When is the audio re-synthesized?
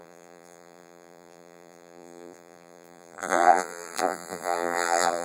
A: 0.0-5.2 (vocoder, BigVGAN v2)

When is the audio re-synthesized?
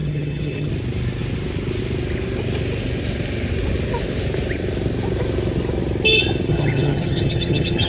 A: 0.0-0.7 (vocoder, HiFi-GAN); 6.5-7.9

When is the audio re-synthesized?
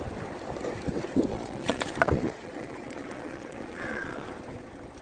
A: 1.3-4.3 (vocoder, Vocos)